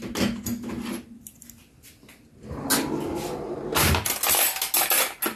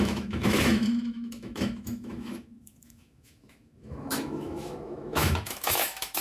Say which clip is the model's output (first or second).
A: second